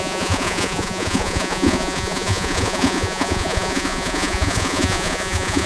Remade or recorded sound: remade